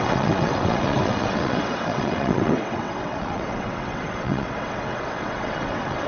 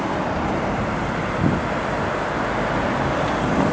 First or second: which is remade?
first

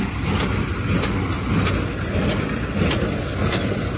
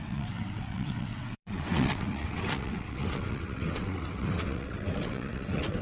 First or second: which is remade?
second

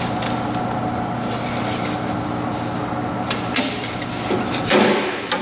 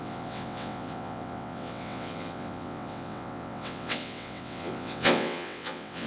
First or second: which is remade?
second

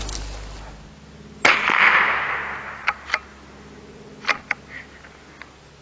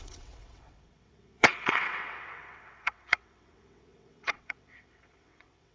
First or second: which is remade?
second